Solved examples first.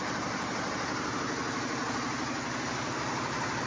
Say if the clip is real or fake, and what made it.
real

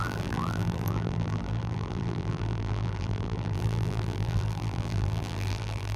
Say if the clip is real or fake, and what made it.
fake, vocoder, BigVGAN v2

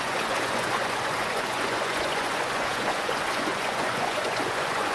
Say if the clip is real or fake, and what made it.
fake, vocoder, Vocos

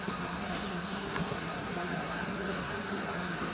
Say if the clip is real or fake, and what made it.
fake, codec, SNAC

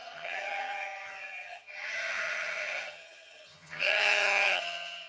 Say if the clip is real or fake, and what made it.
fake, vocoder, HiFi-GAN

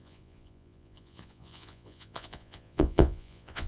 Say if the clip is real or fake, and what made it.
fake, vocoder, Vocos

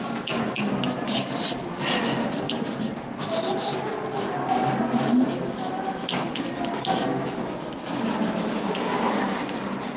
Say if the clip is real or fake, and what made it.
real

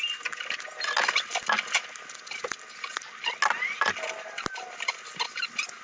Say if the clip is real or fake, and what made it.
real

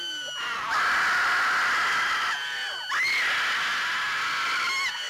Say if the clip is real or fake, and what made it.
real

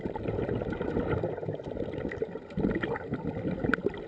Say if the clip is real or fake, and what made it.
real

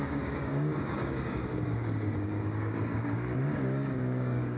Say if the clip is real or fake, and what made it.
fake, codec, DAC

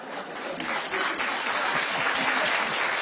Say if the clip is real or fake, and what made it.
real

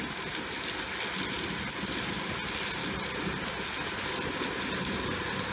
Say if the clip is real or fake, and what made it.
real